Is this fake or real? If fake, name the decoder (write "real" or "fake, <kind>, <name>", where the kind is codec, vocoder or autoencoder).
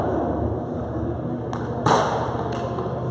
real